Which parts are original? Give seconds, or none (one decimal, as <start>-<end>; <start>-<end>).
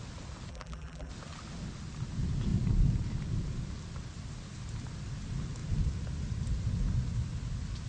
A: 0.0-0.5; 1.1-7.9